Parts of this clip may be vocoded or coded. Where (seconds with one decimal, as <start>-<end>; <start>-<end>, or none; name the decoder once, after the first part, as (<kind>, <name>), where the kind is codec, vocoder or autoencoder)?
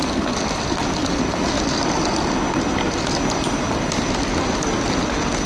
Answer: none